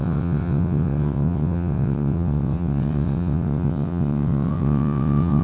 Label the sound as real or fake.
fake